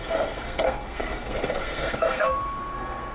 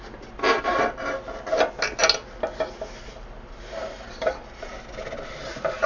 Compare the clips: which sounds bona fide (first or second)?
second